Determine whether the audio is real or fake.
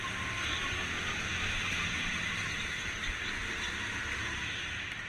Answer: real